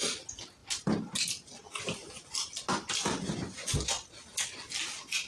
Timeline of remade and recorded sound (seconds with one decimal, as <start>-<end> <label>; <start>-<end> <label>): 0.0-5.3 recorded